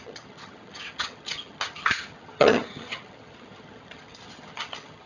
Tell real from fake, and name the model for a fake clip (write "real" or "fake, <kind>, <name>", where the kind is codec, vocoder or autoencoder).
fake, vocoder, HiFi-GAN